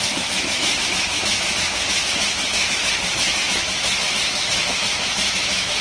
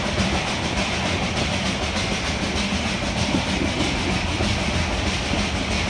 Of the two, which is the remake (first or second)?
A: first